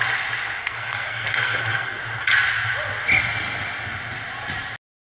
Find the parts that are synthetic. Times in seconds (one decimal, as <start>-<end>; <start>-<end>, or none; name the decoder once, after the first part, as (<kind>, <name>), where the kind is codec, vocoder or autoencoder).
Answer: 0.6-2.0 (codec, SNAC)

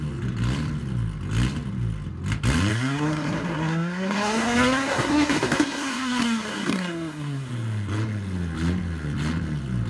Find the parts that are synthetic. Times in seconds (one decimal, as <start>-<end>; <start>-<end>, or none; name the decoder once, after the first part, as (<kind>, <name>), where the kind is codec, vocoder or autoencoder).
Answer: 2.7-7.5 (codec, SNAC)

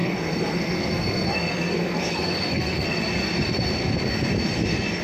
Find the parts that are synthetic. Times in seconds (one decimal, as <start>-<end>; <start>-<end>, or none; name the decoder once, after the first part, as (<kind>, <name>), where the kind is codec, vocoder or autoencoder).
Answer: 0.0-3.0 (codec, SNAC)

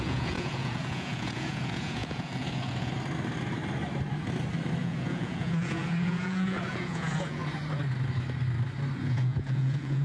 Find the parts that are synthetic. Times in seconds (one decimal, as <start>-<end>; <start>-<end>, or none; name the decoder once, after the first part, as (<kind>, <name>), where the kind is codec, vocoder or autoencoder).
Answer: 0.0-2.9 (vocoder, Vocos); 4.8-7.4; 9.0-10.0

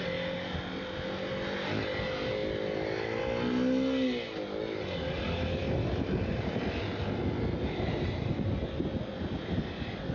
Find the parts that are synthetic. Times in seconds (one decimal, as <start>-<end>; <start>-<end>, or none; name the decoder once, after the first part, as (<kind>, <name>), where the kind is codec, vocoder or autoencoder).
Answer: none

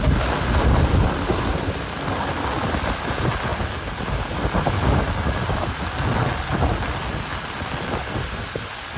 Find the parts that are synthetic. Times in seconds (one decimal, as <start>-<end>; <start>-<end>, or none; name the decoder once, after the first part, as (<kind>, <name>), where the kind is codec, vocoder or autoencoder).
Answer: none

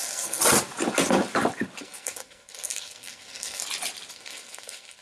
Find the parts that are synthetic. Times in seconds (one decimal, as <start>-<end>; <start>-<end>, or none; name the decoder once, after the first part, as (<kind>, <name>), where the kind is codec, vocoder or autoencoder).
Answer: 0.0-0.4 (codec, SNAC); 1.8-3.6; 4.1-5.0